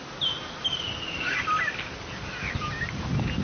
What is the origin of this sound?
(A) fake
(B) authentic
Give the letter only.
B